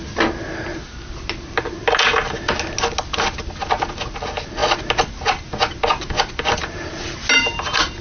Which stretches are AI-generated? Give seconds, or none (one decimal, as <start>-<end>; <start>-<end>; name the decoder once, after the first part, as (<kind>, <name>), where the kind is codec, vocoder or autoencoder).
none